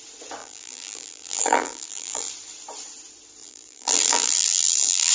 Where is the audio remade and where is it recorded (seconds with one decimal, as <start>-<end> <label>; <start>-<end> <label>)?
0.0-0.4 recorded; 0.4-2.3 remade; 2.3-3.4 recorded; 3.4-5.1 remade